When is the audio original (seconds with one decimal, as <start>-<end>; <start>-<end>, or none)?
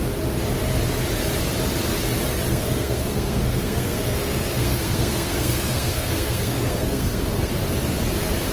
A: 0.0-2.5; 7.5-8.5